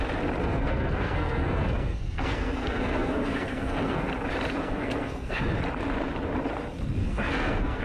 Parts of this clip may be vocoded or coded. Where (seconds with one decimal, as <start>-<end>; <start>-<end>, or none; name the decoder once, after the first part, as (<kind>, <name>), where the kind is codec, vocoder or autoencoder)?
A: 0.4-4.1 (codec, SNAC); 4.6-5.4; 7.0-7.8